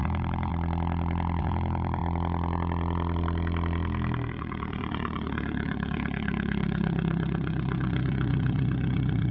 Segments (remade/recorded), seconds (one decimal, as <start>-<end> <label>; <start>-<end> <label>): 0.0-0.5 remade; 0.5-1.4 recorded; 1.4-2.0 remade; 2.0-4.3 recorded; 4.3-9.3 remade